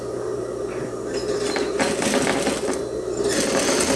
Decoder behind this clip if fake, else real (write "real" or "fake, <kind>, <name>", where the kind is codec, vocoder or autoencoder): real